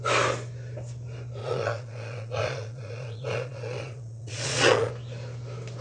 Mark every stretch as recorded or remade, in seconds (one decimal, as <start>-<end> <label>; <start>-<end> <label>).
0.0-1.4 recorded; 1.4-4.9 remade; 4.9-5.8 recorded

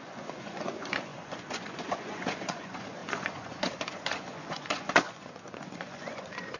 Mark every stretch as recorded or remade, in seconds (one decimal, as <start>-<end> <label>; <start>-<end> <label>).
0.0-6.6 remade

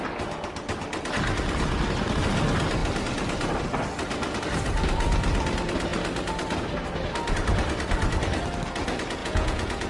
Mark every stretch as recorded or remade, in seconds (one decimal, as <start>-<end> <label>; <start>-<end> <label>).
0.0-9.2 recorded; 9.2-9.9 remade

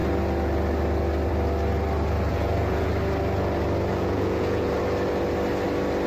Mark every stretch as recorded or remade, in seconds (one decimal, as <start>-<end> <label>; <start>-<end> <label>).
0.0-2.3 recorded; 2.3-2.9 remade; 2.9-3.9 recorded; 3.9-4.7 remade; 4.7-6.1 recorded